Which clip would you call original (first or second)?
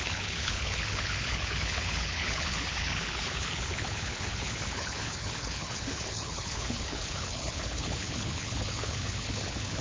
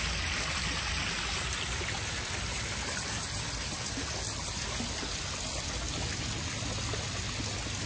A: second